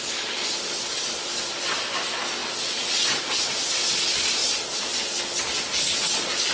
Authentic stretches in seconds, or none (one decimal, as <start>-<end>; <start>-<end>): 0.0-6.5